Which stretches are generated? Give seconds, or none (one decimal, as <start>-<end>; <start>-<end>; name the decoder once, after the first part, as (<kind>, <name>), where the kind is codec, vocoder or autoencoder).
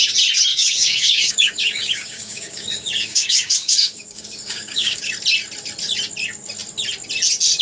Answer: 0.5-5.1 (codec, DAC)